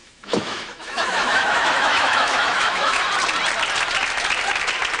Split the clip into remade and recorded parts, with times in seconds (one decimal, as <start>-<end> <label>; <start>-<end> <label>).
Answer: 0.0-3.0 remade; 3.0-5.0 recorded